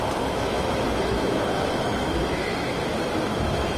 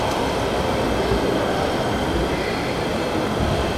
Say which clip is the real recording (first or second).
second